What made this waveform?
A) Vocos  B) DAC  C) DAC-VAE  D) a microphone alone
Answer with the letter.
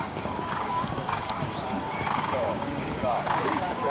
B